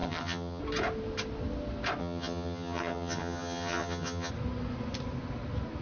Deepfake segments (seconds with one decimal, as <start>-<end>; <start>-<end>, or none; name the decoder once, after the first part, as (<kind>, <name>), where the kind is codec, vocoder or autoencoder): 0.0-0.6 (vocoder, HiFi-GAN); 2.0-4.3

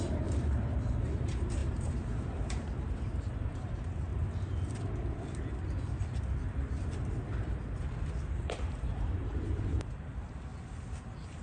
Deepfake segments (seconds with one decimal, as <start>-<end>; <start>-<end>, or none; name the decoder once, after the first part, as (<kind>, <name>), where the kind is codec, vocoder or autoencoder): 0.0-4.1 (vocoder, BigVGAN v2); 7.1-10.5

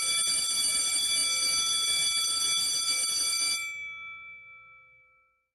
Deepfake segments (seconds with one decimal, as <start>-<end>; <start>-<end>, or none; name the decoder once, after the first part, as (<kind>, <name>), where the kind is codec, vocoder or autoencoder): none

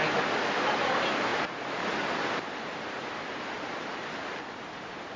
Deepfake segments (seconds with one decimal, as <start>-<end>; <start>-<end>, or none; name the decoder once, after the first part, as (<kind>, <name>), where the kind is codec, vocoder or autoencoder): 1.3-4.4 (vocoder, BigVGAN v2)

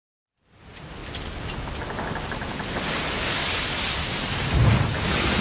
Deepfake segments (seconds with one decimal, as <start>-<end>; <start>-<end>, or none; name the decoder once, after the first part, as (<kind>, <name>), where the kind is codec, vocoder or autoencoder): none

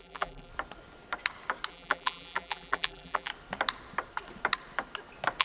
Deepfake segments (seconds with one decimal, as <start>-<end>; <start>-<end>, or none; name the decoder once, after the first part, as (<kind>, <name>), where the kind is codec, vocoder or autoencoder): 0.0-0.5 (vocoder, BigVGAN v2); 1.7-3.3